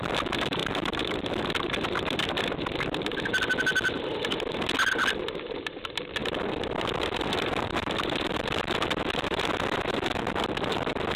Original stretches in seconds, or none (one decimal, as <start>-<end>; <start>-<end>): 0.0-0.6; 1.3-6.2; 8.6-11.2